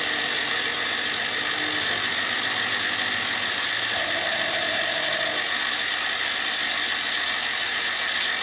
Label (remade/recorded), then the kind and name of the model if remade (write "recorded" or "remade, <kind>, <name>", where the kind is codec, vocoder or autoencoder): recorded